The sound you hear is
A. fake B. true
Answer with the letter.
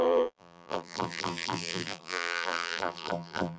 A